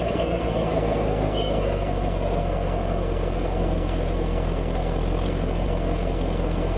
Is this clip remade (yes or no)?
yes